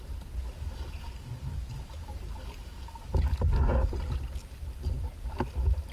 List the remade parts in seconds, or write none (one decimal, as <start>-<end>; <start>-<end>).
none